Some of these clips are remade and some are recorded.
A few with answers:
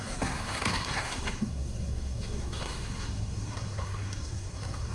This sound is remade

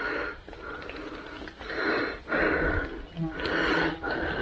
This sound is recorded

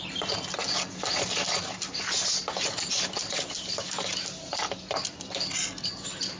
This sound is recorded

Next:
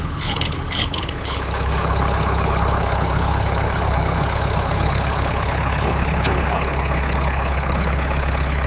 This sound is remade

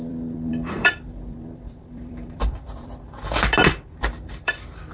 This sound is remade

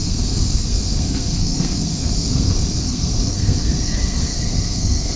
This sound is remade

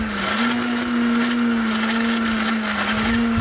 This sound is recorded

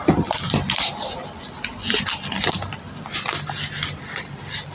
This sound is recorded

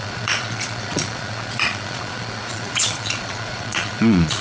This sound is remade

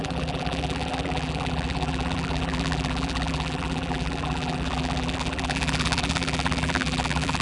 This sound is remade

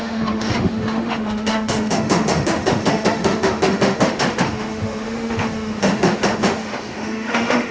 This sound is remade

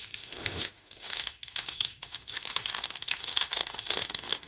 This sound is remade